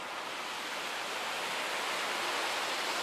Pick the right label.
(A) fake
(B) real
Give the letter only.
B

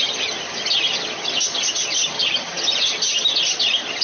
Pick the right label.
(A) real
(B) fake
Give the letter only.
A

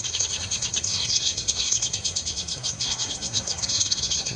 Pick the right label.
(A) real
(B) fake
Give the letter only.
B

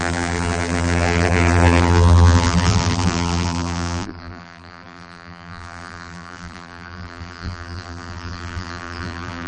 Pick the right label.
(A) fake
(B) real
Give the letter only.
A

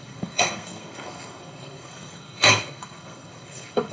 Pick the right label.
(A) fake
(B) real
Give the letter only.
A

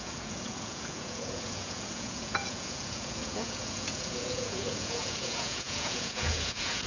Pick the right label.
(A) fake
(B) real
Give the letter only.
A